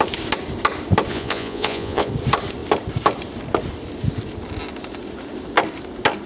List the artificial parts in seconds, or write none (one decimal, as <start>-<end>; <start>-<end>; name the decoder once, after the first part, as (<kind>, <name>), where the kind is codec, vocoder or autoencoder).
1.1-2.1 (vocoder, Vocos)

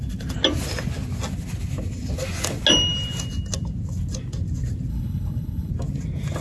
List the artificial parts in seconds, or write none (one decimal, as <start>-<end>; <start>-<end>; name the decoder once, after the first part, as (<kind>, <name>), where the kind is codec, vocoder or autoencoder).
4.9-5.7 (codec, HILCodec)

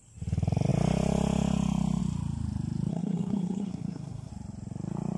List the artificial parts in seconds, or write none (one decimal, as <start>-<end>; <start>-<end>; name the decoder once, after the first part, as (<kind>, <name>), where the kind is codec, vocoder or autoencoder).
2.9-4.3 (codec, SNAC)

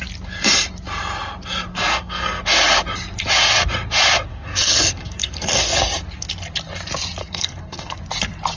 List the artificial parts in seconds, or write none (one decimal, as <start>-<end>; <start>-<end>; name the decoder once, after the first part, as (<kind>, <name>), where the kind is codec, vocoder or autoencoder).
1.7-2.4 (codec, SNAC); 4.3-5.8; 7.2-8.0

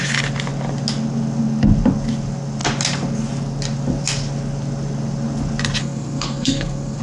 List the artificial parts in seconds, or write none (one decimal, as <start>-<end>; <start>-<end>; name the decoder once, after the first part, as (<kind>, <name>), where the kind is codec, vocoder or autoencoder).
5.8-7.0 (codec, SNAC)